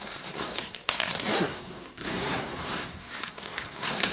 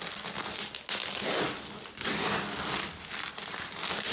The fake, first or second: first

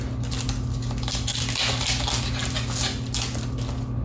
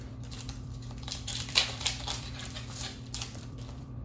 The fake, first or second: second